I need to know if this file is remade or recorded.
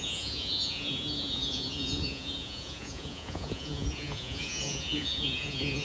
remade